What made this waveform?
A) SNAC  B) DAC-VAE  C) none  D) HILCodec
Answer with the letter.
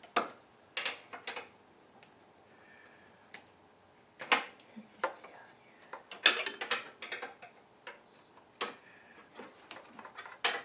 C